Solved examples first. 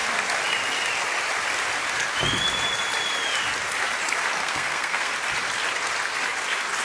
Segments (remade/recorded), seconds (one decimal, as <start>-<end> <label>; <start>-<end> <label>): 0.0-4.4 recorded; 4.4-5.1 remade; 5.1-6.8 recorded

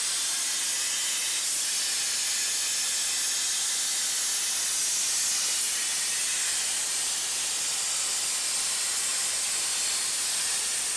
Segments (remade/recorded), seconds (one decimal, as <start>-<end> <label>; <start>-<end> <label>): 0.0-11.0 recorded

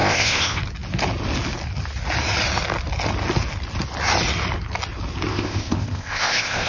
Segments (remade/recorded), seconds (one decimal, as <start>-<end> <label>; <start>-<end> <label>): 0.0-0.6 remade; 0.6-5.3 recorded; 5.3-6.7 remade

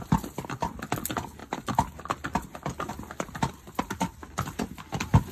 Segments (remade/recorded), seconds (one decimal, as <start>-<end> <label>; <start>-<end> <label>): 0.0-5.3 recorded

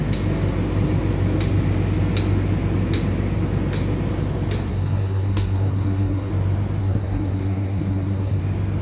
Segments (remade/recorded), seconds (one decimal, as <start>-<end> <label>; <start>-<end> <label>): 0.0-4.7 recorded; 4.7-6.3 remade; 6.3-6.8 recorded; 6.8-8.4 remade; 8.4-8.8 recorded